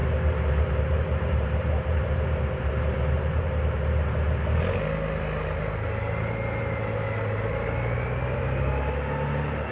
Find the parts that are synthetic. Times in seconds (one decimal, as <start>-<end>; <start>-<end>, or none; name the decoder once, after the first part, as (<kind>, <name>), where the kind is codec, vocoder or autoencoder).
0.0-3.5 (vocoder, BigVGAN v2)